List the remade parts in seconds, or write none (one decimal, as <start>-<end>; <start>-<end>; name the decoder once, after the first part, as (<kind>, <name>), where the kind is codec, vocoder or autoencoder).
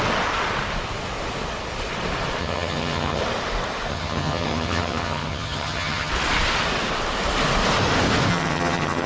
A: 2.4-3.2 (vocoder, HiFi-GAN); 3.9-6.1; 8.3-9.1